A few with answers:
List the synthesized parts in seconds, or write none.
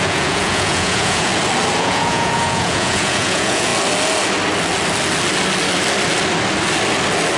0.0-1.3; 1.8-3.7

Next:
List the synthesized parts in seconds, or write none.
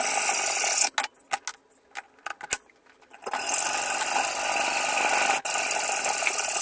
none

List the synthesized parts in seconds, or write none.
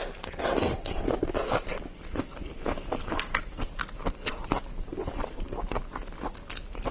none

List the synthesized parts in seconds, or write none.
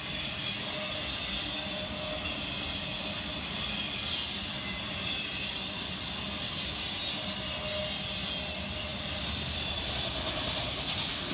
none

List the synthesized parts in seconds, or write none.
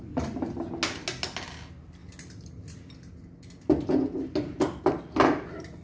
none